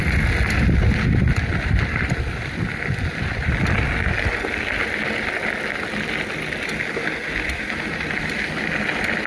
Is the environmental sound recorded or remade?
recorded